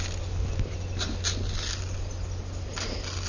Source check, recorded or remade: recorded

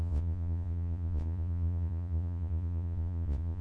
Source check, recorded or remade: remade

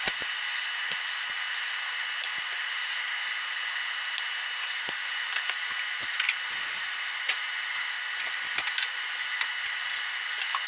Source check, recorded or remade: recorded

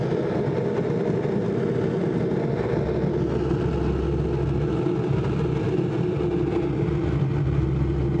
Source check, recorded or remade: recorded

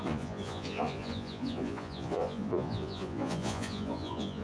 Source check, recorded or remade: remade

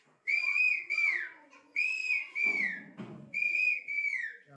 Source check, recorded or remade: remade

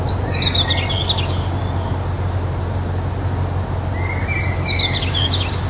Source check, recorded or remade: recorded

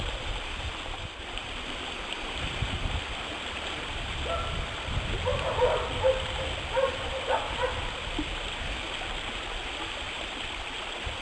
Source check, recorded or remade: recorded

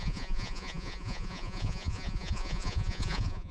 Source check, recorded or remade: remade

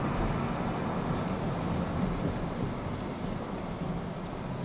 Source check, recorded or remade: recorded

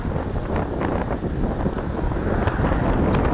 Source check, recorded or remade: recorded